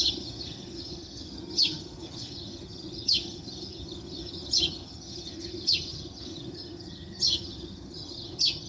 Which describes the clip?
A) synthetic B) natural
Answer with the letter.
A